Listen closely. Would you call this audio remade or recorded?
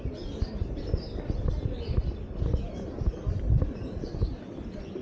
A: recorded